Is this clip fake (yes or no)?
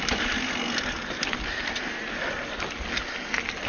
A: no